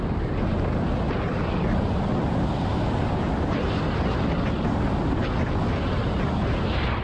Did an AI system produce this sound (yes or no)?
no